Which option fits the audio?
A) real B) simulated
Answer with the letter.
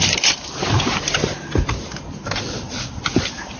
A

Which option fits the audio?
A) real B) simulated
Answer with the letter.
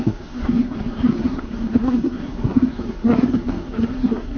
B